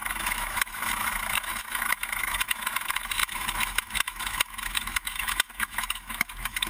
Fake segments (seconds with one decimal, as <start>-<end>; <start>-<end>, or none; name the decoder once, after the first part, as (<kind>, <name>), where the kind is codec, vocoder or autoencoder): 0.0-6.7 (autoencoder, DAC-VAE)

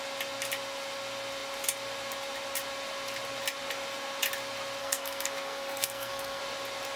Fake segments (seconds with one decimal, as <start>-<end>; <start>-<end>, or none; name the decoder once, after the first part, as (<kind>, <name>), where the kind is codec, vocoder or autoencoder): 4.8-6.4 (codec, SNAC)

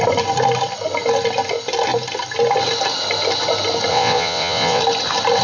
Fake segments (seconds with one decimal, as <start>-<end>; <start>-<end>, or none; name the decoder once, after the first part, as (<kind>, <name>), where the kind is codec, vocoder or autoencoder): 3.9-4.8 (vocoder, WaveNeXt)

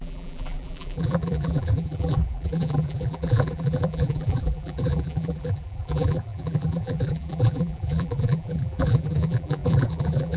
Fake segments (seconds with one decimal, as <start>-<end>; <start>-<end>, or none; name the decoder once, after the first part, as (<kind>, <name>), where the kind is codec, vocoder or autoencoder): 0.0-10.4 (vocoder, BigVGAN v2)

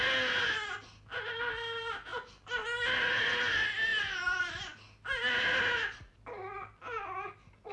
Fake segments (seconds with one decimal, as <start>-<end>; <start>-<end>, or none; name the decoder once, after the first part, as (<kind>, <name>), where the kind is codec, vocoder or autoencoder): none